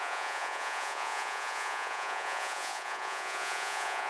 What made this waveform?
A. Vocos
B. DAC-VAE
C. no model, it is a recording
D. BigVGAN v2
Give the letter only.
A